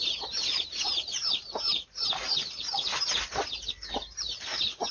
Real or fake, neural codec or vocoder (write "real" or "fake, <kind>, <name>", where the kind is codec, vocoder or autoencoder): real